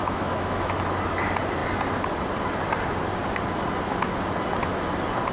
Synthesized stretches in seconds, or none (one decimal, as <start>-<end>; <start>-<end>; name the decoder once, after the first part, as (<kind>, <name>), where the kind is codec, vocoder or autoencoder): 0.0-0.7 (autoencoder, DAC-VAE)